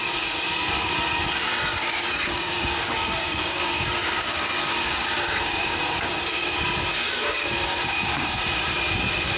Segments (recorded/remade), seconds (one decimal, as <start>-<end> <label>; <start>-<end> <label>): 0.0-1.7 recorded; 1.7-6.5 remade; 6.5-6.9 recorded; 6.9-8.6 remade; 8.6-9.4 recorded